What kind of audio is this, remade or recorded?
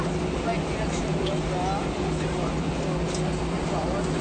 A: recorded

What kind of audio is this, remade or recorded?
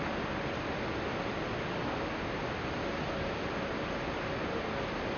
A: recorded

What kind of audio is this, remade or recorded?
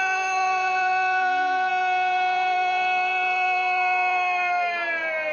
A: remade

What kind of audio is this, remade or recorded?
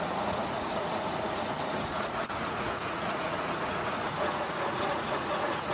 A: remade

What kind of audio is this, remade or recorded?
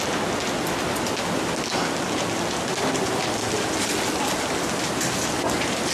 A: recorded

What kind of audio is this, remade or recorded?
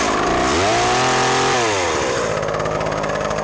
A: recorded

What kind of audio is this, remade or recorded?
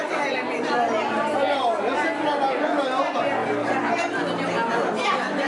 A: recorded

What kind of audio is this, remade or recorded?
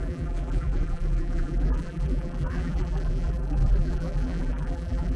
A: remade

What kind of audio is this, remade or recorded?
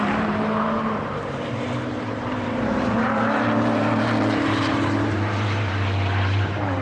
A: remade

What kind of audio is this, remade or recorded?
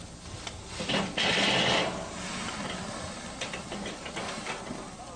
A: recorded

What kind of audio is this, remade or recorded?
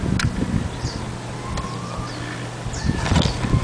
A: recorded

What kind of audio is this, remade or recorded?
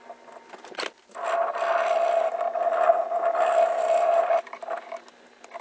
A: recorded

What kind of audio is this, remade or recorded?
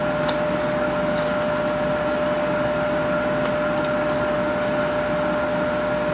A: recorded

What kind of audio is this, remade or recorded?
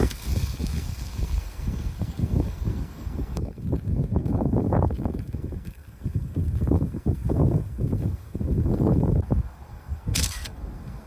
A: remade